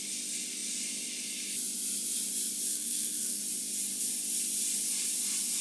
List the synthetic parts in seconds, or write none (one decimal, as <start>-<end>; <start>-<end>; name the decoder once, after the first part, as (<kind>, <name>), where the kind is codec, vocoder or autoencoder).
2.7-3.4 (codec, SNAC)